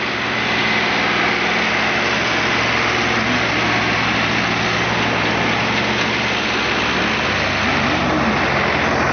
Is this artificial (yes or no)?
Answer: no